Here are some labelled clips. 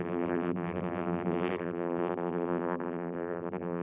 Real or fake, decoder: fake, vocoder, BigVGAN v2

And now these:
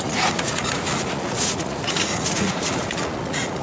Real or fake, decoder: fake, vocoder, Vocos